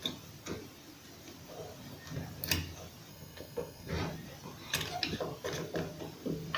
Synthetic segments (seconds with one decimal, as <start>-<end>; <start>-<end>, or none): 3.1-3.9